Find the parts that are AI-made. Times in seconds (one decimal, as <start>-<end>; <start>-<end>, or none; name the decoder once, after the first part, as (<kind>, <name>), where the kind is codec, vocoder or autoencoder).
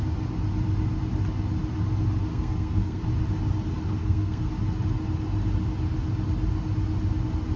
2.3-3.0 (codec, SNAC); 4.0-4.5